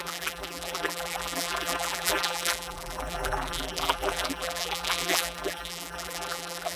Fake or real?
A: fake